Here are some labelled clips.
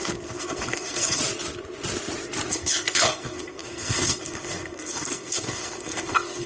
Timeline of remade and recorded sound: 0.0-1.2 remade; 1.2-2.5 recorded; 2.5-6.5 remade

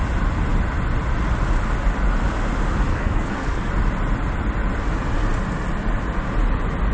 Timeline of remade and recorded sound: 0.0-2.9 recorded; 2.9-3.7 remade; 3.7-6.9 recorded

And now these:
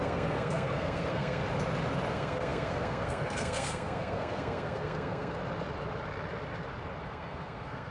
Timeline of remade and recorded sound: 0.0-1.4 remade; 1.4-2.1 recorded; 2.1-5.4 remade; 5.4-7.0 recorded; 7.0-7.9 remade